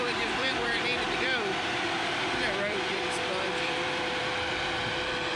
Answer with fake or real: fake